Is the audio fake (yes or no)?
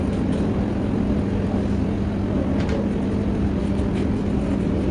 no